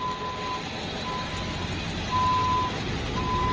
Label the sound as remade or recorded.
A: recorded